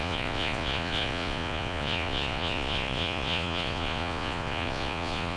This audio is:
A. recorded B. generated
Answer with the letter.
B